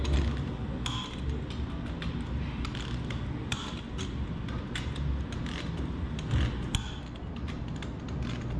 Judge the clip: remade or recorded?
recorded